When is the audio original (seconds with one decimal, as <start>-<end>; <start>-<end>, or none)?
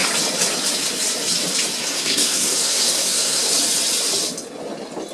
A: 0.0-1.8; 3.5-5.1